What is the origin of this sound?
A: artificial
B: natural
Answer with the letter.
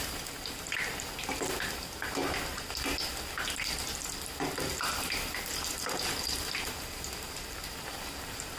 B